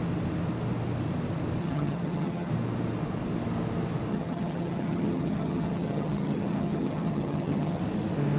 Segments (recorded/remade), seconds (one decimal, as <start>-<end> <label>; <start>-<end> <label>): 0.0-1.6 recorded; 1.6-2.5 remade; 2.5-4.1 recorded; 4.1-7.8 remade; 7.8-8.4 recorded